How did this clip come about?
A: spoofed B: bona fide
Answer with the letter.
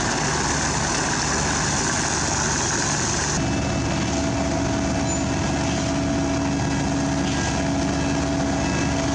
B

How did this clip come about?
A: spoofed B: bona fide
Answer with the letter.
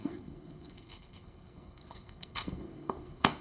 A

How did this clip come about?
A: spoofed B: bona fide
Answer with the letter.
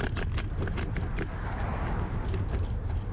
B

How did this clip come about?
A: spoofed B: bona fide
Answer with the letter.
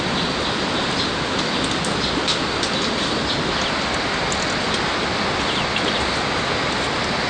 B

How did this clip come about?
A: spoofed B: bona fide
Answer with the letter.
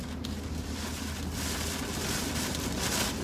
B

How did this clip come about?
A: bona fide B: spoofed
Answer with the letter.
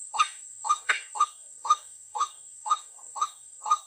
B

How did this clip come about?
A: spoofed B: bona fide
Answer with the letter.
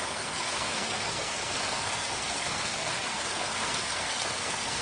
A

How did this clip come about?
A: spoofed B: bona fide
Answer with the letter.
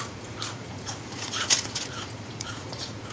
A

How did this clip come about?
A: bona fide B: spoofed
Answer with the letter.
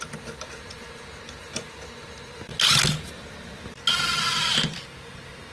A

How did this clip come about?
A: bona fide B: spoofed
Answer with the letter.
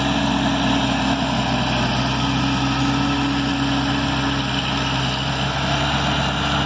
A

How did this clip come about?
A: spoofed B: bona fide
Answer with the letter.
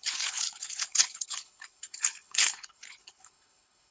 A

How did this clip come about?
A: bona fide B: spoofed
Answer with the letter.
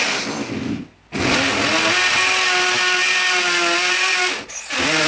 A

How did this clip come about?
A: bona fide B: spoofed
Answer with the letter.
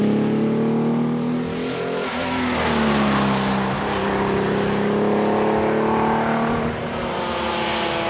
A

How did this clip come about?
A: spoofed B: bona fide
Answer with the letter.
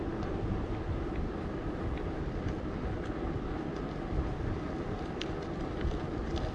B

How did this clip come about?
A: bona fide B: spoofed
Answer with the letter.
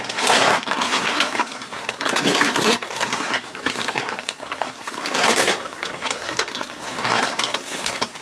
B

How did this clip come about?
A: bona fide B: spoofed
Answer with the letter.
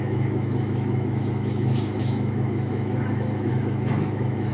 B